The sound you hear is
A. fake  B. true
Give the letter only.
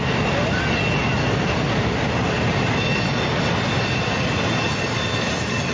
B